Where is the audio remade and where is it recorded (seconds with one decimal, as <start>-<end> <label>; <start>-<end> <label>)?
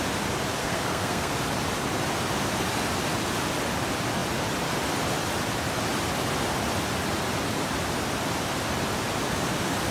0.0-0.6 recorded; 0.6-1.3 remade; 1.3-9.9 recorded